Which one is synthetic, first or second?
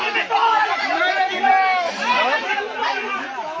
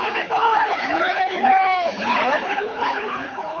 second